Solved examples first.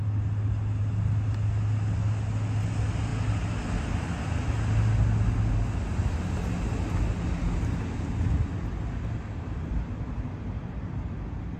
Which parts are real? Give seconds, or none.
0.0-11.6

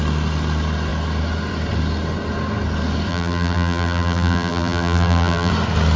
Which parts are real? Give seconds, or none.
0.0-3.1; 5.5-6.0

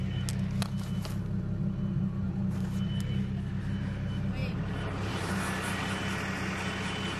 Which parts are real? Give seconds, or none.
0.0-4.4; 5.3-7.2